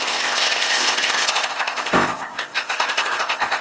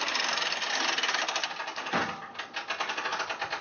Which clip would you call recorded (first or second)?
second